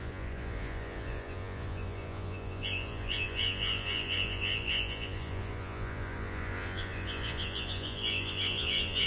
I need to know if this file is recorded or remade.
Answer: remade